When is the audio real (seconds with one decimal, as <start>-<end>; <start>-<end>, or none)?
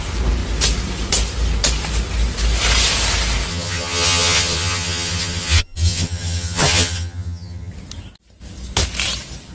0.0-3.5; 7.7-9.5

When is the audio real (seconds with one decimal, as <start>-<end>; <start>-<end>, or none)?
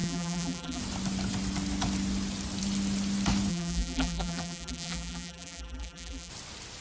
0.8-3.5; 6.3-6.8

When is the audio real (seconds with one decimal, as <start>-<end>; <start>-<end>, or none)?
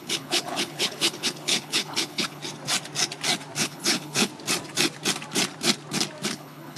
2.4-3.6; 4.3-6.3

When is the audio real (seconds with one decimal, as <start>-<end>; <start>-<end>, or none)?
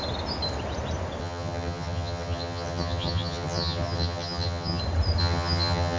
0.0-1.2; 4.8-5.2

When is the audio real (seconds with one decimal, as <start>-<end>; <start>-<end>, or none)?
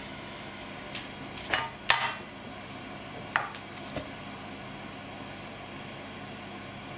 0.7-7.0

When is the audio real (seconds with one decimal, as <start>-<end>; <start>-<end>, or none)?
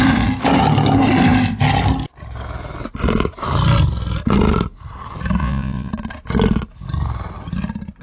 0.0-5.4; 5.9-8.0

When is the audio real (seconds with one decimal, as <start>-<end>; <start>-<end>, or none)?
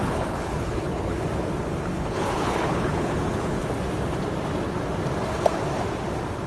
1.2-1.9; 3.6-6.5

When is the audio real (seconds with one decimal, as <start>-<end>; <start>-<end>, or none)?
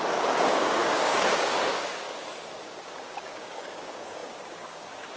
none